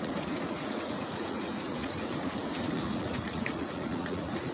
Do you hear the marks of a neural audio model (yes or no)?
yes